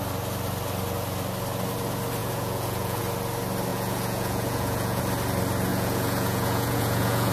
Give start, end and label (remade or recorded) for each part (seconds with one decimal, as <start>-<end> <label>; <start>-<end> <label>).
0.0-2.2 recorded; 2.2-3.0 remade; 3.0-3.7 recorded; 3.7-5.0 remade; 5.0-5.7 recorded; 5.7-7.3 remade